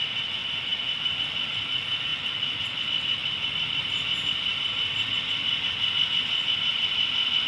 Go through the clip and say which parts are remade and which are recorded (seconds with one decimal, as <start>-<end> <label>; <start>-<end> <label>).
0.0-0.4 recorded; 0.4-1.1 remade; 1.1-2.1 recorded; 2.1-2.8 remade; 2.8-3.2 recorded; 3.2-3.8 remade; 3.8-7.5 recorded